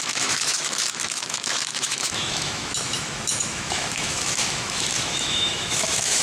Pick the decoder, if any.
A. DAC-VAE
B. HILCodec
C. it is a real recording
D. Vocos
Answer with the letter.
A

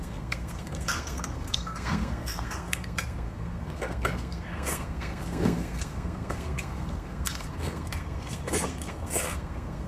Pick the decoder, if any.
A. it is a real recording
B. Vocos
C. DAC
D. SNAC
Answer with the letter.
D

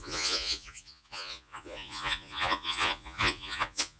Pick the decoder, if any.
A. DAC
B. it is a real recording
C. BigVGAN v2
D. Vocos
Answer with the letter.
D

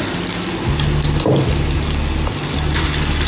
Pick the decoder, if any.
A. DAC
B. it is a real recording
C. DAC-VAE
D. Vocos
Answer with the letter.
B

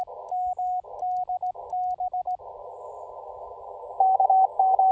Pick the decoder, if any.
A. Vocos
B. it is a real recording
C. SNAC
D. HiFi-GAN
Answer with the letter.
B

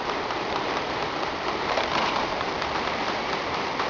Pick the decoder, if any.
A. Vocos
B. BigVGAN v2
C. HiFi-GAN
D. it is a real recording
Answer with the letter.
B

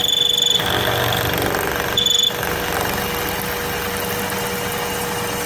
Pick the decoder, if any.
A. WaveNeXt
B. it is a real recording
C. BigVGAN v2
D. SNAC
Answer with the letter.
B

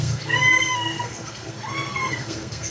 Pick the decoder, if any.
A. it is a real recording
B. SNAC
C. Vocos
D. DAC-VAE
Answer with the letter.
B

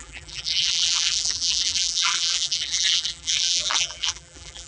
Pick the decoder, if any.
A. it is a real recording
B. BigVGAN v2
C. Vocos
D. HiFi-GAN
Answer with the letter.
B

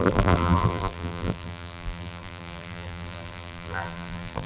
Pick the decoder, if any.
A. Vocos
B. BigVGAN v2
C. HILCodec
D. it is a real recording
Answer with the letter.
B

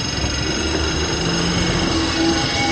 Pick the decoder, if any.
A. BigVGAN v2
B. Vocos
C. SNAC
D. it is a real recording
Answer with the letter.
D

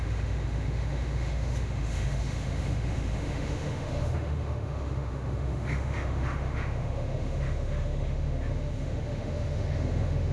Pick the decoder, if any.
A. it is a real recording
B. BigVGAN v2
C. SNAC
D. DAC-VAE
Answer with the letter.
D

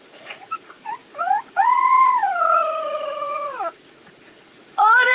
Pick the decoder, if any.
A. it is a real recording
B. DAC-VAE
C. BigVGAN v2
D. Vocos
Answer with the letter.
D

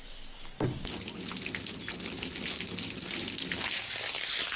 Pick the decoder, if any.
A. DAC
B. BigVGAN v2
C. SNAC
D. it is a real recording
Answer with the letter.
D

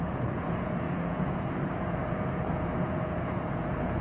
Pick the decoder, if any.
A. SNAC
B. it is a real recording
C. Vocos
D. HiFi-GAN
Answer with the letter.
C